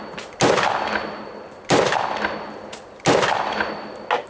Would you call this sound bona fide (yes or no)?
yes